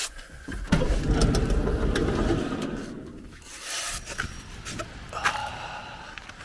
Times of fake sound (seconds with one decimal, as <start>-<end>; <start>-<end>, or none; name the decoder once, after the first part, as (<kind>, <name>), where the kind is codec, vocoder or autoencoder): 0.0-0.7 (vocoder, Vocos)